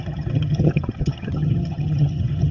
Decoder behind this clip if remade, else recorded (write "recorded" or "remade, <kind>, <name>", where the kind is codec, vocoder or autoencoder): remade, vocoder, HiFi-GAN